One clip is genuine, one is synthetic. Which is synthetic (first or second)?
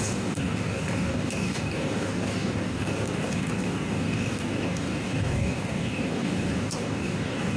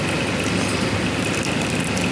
first